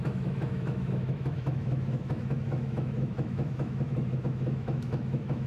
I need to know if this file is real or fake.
fake